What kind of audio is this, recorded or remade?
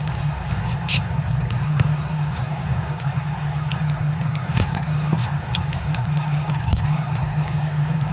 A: remade